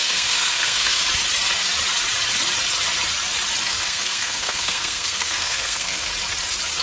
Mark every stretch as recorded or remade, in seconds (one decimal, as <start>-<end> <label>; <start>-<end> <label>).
0.0-1.0 remade; 1.0-3.7 recorded; 3.7-6.1 remade; 6.1-6.8 recorded